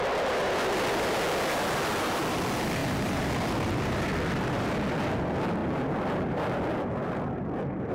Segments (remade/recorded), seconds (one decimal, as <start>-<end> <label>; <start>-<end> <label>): 0.0-2.8 recorded; 2.8-5.0 remade; 5.0-5.6 recorded; 5.6-7.9 remade